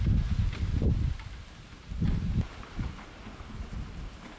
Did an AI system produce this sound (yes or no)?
no